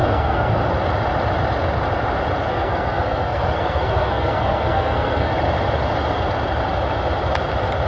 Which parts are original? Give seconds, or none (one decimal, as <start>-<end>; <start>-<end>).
0.6-2.5; 5.3-7.9